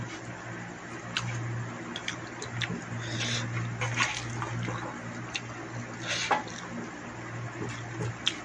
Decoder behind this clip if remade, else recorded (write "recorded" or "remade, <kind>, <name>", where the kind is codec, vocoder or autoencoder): recorded